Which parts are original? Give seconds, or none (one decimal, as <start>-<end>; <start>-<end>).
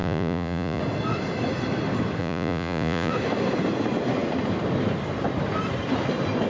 0.8-2.2; 3.1-6.5